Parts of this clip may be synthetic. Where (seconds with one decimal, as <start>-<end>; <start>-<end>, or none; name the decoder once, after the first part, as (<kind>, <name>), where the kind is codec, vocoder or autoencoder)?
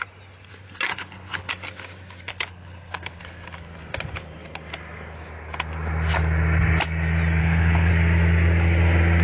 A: 0.9-1.5 (codec, HILCodec); 2.3-3.2; 7.4-7.9